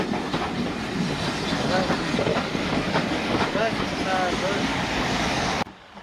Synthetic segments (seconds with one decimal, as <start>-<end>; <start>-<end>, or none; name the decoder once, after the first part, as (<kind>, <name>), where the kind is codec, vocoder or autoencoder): 2.3-3.8 (codec, DAC); 4.7-6.0